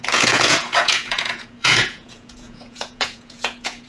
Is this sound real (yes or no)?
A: no